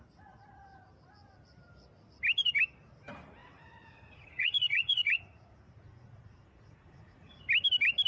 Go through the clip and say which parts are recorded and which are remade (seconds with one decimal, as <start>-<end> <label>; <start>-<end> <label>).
0.0-3.4 recorded; 3.4-7.4 remade; 7.4-8.1 recorded

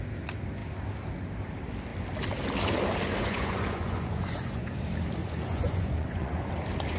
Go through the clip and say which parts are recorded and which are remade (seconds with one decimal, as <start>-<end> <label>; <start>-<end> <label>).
0.0-3.2 recorded; 3.2-4.8 remade; 4.8-5.2 recorded; 5.2-6.5 remade; 6.5-7.0 recorded